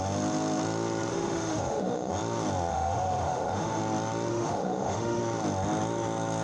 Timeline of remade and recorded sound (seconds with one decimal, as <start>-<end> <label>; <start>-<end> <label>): 0.0-1.1 recorded; 1.1-2.1 remade; 2.1-2.7 recorded; 2.7-3.8 remade; 3.8-4.3 recorded; 4.3-5.2 remade; 5.2-6.4 recorded